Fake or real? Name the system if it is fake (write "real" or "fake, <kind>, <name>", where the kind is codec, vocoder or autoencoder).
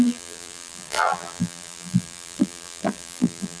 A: fake, vocoder, BigVGAN v2